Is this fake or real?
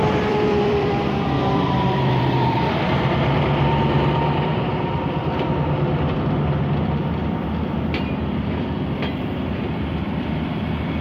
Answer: fake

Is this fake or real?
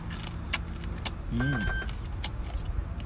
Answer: real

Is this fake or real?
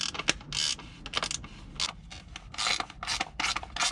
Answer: real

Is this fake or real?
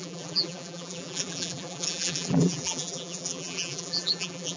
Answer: fake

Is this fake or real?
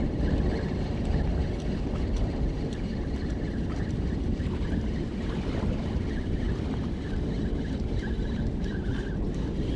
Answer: fake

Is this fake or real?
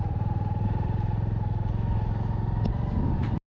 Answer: real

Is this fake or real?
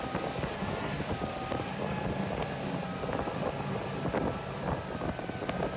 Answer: real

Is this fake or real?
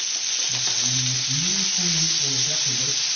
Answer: real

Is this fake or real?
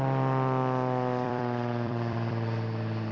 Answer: fake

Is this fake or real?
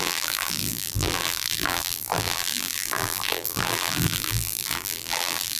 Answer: fake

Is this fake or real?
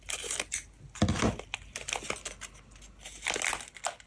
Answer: real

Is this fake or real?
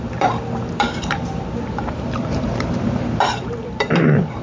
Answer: fake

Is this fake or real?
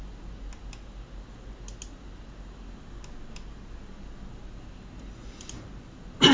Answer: real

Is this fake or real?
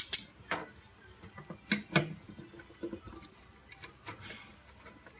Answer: real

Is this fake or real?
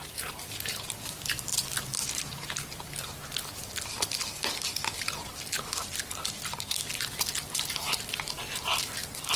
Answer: real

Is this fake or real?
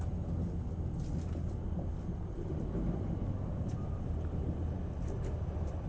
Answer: real